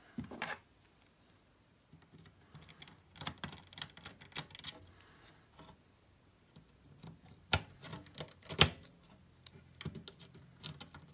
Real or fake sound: real